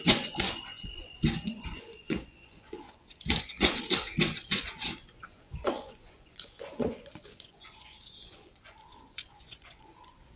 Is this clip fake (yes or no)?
yes